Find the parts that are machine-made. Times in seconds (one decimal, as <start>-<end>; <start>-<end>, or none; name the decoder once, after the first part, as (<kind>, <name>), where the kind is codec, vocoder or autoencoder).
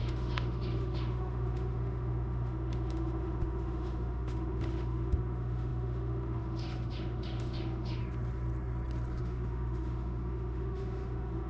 0.0-8.0 (autoencoder, DAC-VAE); 9.2-11.5